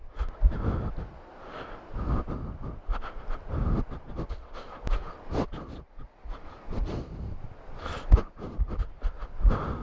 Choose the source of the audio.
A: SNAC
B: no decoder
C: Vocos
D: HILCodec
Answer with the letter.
B